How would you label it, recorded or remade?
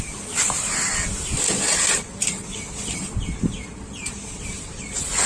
recorded